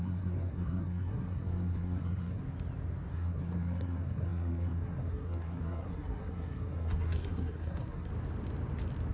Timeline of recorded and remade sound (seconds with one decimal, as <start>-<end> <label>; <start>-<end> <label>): 0.0-2.4 remade; 2.4-3.1 recorded; 3.1-8.1 remade; 8.1-9.1 recorded